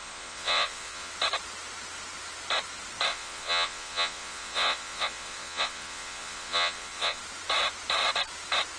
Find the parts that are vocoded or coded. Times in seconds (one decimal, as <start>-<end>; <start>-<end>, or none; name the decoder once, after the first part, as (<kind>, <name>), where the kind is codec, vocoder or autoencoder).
0.0-1.1 (vocoder, Vocos); 3.1-7.2